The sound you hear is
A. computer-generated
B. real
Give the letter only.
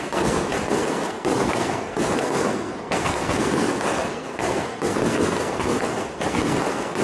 A